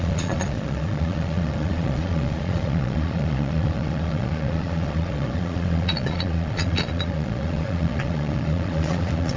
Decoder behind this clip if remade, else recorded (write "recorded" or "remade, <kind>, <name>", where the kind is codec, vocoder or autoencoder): remade, vocoder, Vocos